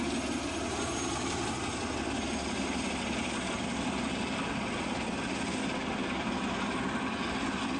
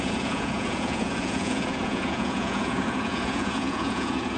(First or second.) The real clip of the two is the first